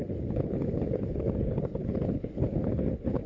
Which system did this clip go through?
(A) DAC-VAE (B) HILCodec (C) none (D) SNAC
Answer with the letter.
B